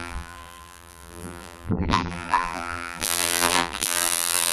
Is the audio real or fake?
fake